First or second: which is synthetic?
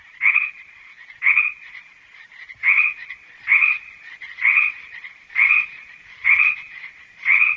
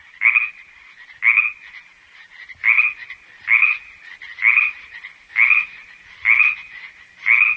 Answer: first